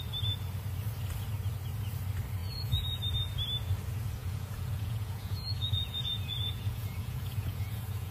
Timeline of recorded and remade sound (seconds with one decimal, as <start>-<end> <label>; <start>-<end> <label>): 0.0-2.4 recorded; 2.4-3.0 remade; 3.0-4.2 recorded; 4.2-8.1 remade